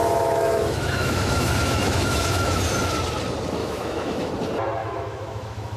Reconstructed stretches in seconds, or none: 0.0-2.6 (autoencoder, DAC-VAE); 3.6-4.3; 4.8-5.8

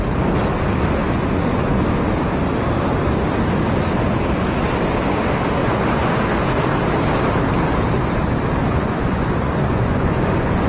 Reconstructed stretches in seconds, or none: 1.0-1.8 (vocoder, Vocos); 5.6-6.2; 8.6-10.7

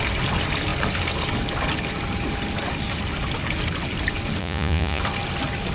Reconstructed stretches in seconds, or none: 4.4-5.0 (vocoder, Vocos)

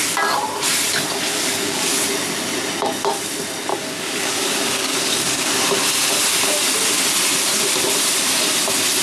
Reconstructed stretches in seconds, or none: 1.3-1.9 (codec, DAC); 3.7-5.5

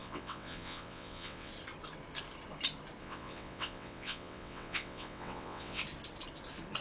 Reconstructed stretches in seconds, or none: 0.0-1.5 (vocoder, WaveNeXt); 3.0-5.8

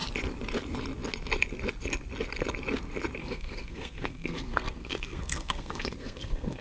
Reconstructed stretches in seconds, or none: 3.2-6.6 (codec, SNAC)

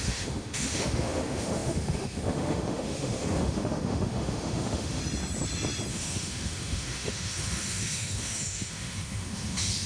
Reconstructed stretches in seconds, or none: 0.0-5.0 (autoencoder, DAC-VAE); 5.9-9.9

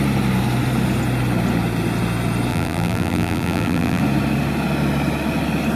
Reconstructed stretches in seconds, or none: 2.5-4.0 (vocoder, BigVGAN v2)